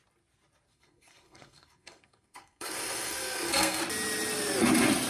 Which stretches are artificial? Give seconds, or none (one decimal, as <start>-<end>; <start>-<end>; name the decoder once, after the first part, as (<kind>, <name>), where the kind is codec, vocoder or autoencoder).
0.7-3.8 (codec, SNAC)